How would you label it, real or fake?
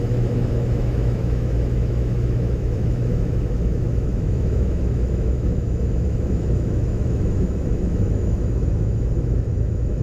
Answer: fake